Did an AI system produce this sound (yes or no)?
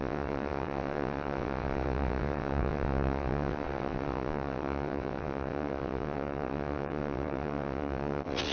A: yes